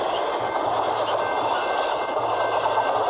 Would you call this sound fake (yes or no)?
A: no